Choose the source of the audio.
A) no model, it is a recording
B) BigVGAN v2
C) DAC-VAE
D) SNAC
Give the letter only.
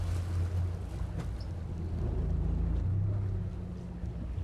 A